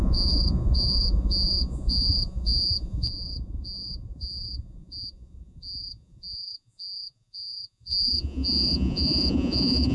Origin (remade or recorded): remade